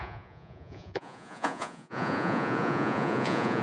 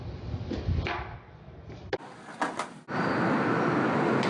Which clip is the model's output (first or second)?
first